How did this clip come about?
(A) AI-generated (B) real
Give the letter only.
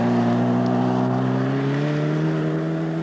B